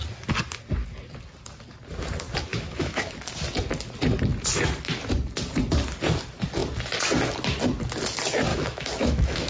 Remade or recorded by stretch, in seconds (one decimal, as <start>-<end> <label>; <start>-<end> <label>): 0.0-2.5 recorded; 2.5-3.1 remade; 3.1-8.5 recorded; 8.5-9.5 remade